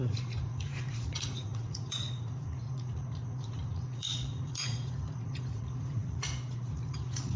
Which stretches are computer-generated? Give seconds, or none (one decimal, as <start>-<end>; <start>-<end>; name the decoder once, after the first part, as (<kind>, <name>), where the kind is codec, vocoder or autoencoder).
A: 0.0-7.4 (vocoder, Vocos)